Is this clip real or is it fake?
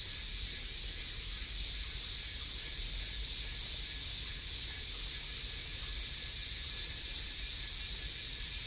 real